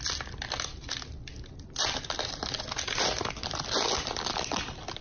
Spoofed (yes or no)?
no